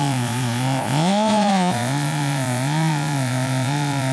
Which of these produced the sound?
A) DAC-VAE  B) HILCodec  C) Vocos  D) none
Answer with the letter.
C